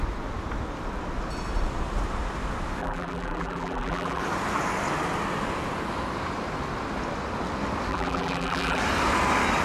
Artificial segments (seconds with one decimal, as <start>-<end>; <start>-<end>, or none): 2.8-4.2; 7.9-8.8